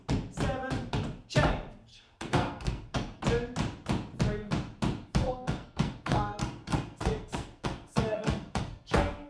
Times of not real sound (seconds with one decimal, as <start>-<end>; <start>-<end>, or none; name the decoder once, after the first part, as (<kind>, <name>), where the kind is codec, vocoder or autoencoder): 1.9-3.2 (codec, SNAC); 5.0-9.3